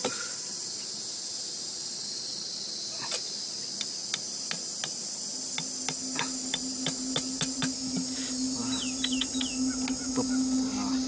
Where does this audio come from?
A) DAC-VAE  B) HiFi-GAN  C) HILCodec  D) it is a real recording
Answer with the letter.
D